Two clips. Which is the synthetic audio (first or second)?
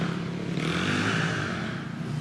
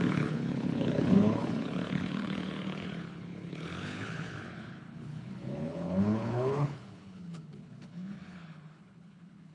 second